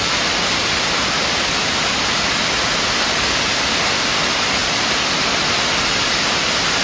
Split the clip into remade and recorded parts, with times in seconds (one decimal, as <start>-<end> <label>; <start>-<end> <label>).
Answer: 0.0-6.8 recorded